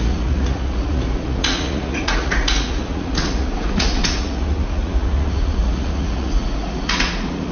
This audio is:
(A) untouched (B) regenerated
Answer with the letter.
B